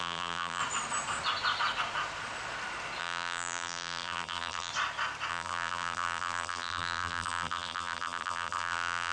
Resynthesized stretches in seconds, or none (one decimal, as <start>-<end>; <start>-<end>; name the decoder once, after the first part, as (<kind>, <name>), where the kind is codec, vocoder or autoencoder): 0.0-0.6 (vocoder, BigVGAN v2); 3.0-4.7; 5.3-9.1